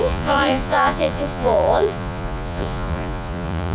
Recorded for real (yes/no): no